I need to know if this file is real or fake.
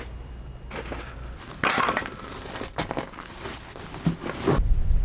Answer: real